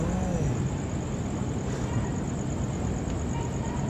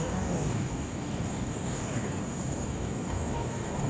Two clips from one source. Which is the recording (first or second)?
first